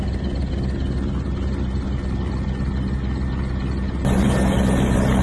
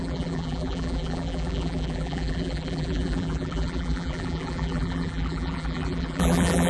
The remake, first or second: second